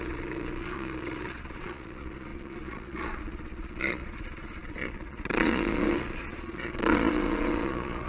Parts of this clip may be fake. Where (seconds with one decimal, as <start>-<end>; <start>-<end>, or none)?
0.0-8.1